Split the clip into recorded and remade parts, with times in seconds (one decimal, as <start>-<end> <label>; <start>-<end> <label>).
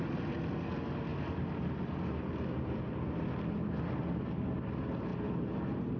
0.0-6.0 recorded